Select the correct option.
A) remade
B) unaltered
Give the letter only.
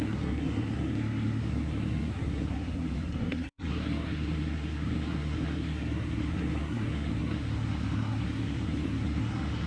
A